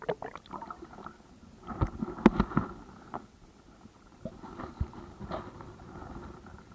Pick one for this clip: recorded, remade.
recorded